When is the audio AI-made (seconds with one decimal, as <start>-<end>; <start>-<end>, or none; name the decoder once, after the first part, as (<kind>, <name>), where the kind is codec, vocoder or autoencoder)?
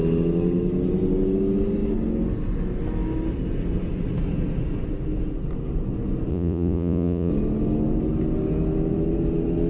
6.3-7.3 (vocoder, Vocos)